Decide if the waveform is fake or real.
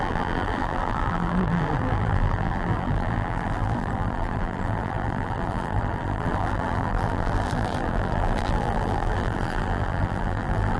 fake